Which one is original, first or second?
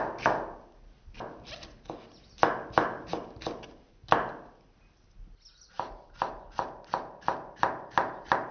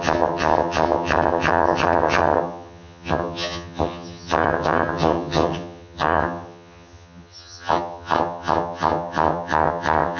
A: first